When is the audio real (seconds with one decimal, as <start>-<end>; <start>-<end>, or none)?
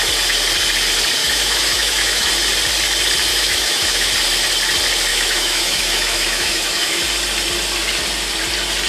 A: 0.0-1.2; 2.3-3.3; 4.1-5.1; 7.0-8.9